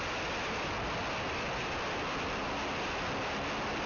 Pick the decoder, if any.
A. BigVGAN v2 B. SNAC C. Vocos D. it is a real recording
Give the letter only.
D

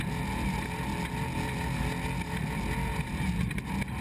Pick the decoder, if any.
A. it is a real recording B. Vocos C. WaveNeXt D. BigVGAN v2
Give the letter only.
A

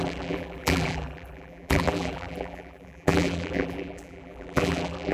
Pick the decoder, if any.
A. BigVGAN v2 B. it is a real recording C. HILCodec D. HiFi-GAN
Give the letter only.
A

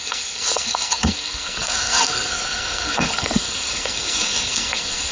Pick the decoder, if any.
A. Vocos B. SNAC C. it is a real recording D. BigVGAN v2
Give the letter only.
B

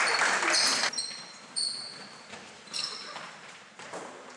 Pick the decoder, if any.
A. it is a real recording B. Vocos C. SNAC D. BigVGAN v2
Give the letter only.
D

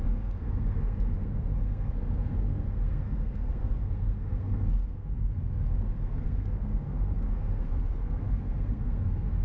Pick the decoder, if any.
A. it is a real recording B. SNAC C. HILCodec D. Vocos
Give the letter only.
B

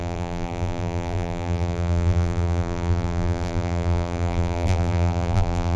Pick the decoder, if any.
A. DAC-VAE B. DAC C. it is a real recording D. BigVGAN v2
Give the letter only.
D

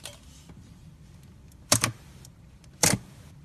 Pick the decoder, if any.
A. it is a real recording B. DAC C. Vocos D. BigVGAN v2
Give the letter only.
D